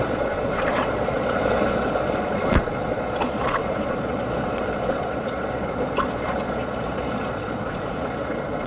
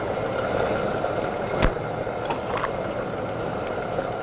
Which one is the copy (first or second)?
first